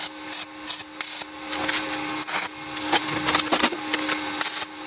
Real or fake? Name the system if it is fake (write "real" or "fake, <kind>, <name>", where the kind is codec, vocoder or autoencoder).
real